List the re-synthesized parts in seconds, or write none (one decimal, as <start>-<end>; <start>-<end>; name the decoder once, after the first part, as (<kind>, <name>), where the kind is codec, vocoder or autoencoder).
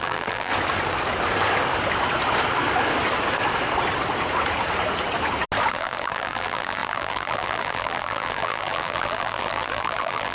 0.0-0.5 (vocoder, BigVGAN v2); 5.7-10.3